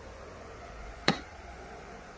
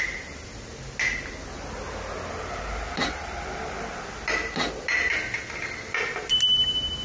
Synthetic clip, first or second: first